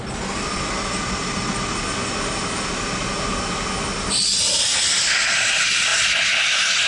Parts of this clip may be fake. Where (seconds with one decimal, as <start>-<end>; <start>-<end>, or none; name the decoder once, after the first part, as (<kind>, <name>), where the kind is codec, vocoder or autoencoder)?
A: none